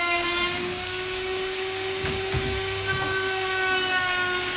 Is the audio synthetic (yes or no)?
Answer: yes